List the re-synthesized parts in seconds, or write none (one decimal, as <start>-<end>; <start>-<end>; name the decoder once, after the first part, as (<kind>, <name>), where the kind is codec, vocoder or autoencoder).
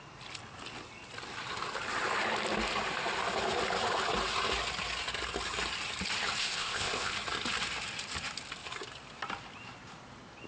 6.4-7.1 (codec, ZipCodec)